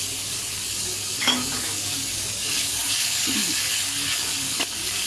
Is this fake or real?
fake